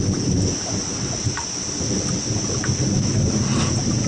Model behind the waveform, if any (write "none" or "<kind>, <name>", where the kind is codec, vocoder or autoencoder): none